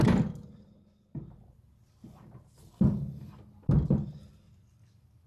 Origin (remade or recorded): recorded